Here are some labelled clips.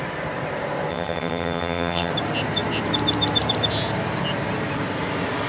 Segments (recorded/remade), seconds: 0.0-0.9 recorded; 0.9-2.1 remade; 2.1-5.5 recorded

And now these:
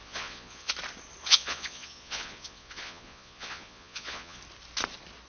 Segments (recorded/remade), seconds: 0.0-0.7 remade; 0.7-1.2 recorded; 1.2-4.4 remade; 4.4-5.3 recorded

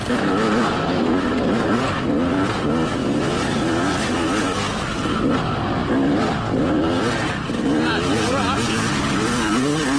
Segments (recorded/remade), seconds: 0.0-10.0 recorded

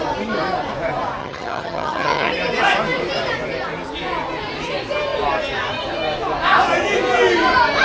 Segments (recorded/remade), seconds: 0.0-1.2 recorded; 1.2-2.3 remade; 2.3-7.8 recorded

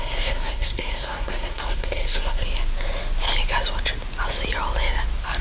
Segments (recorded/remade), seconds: 0.0-2.4 remade; 2.4-5.4 recorded